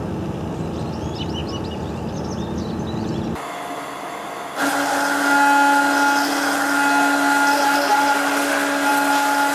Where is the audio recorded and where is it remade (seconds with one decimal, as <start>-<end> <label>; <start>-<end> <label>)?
0.0-9.5 recorded